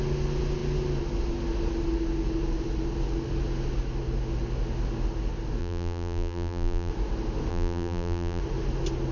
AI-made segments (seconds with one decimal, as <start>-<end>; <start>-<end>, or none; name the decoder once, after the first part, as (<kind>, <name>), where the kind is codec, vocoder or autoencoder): 5.6-6.9 (vocoder, BigVGAN v2); 7.5-8.4